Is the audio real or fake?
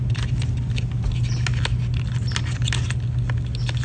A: real